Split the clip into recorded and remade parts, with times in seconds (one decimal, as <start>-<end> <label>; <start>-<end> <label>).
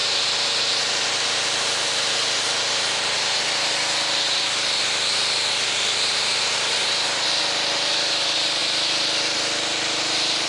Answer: 0.0-10.5 remade